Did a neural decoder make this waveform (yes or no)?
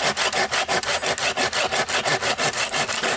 no